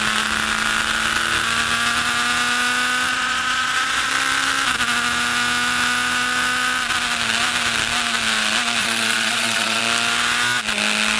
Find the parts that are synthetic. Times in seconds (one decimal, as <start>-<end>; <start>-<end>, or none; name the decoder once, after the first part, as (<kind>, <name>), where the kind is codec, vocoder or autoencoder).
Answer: 3.1-4.1 (vocoder, Vocos); 8.8-9.8